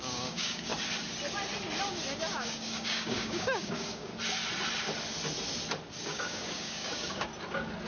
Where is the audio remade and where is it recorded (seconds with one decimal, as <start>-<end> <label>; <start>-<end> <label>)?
0.0-0.7 remade; 0.7-2.4 recorded; 2.4-4.1 remade; 4.1-6.0 recorded; 6.0-7.3 remade; 7.3-7.9 recorded